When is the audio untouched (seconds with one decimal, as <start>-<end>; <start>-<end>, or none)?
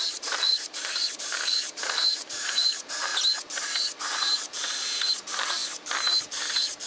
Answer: 3.1-3.9; 5.6-6.2